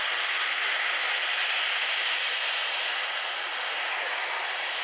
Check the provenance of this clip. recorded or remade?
recorded